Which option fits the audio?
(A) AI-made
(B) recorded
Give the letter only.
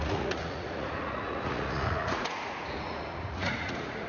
A